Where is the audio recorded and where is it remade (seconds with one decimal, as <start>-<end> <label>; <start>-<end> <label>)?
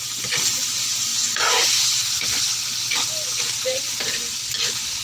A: 0.0-5.0 recorded